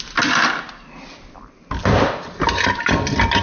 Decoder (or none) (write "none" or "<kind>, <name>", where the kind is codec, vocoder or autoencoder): none